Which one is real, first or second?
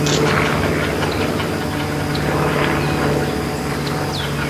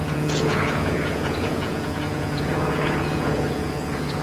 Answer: first